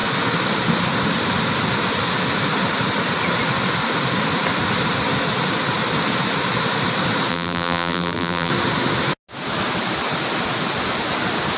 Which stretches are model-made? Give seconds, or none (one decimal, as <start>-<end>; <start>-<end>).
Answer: 7.3-8.5